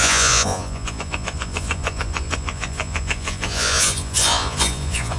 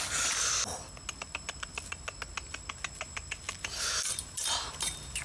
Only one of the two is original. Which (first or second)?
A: second